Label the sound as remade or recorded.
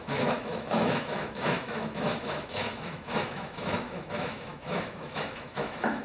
remade